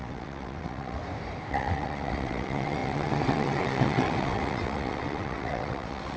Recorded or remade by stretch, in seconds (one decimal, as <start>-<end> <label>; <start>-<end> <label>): 0.0-1.0 remade; 1.0-1.5 recorded; 1.5-6.2 remade